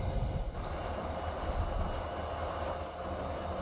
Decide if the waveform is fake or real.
real